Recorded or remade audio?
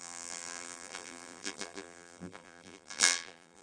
remade